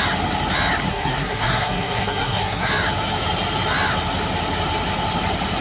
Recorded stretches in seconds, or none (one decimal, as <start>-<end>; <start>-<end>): 0.0-0.9; 2.7-5.6